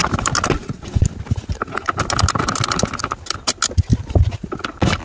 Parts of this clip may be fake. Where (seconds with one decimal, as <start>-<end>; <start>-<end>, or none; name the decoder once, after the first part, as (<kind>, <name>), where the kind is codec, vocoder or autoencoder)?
none